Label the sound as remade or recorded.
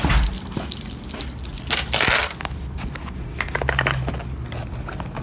recorded